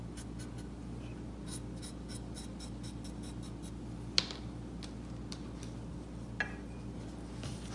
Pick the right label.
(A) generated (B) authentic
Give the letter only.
B